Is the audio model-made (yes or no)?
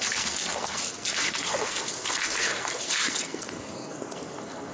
yes